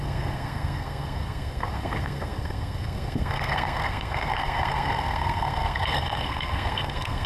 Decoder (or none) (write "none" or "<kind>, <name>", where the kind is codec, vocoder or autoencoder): codec, SNAC